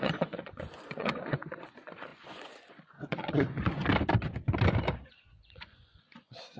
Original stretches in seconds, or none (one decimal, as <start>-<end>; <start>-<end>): 3.8-5.0